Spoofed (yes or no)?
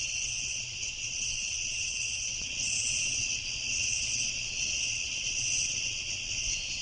yes